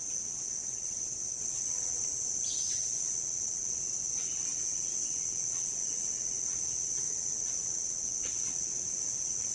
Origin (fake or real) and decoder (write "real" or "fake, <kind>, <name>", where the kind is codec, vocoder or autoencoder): fake, vocoder, WaveNeXt